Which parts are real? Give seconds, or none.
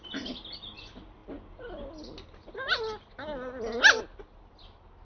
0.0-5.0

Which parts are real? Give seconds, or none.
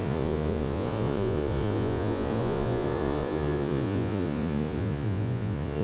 none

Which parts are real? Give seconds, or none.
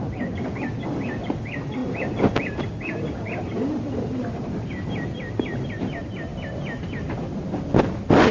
0.0-8.3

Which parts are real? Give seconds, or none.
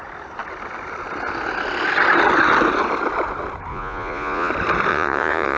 0.0-3.7; 4.5-4.9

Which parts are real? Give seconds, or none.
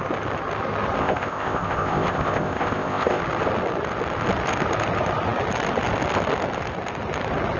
0.0-1.0; 3.2-7.6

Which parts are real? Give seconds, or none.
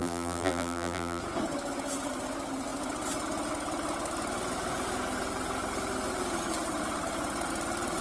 1.2-8.0